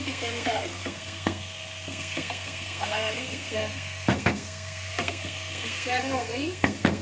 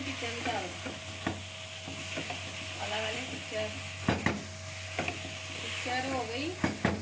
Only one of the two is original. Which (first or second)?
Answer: second